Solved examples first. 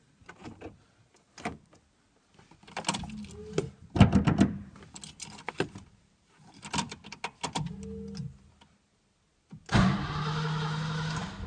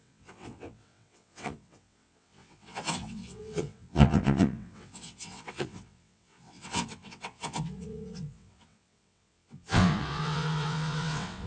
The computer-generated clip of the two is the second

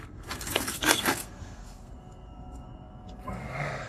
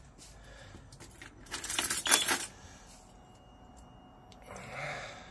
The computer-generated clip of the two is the first